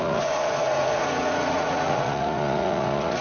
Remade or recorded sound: remade